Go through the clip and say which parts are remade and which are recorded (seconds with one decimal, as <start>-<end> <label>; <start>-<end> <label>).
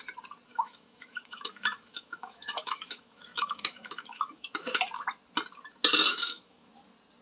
0.0-0.5 recorded; 0.5-4.8 remade; 4.8-6.1 recorded; 6.1-6.7 remade; 6.7-7.2 recorded